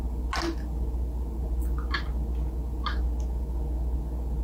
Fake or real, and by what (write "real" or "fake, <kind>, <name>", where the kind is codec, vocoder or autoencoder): real